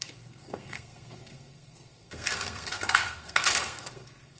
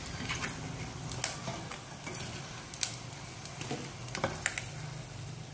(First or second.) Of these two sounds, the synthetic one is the first